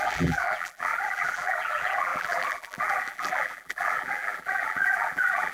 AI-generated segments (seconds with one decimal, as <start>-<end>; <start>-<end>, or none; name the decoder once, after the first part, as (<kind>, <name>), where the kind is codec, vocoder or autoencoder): 0.0-5.5 (vocoder, BigVGAN v2)